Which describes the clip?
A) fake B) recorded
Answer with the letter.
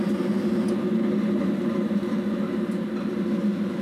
B